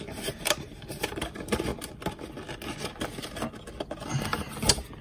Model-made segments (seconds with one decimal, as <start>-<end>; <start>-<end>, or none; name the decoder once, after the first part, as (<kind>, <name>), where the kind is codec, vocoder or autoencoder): 0.0-1.7 (vocoder, BigVGAN v2)